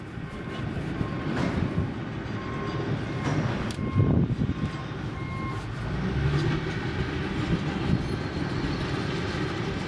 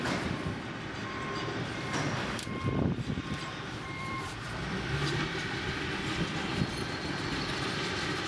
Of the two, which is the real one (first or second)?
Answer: first